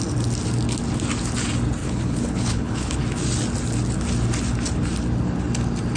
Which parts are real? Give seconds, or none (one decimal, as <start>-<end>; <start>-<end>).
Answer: 0.0-1.8; 3.0-6.0